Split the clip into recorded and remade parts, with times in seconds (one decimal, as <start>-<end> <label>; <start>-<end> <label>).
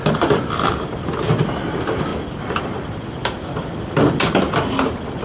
0.0-5.2 recorded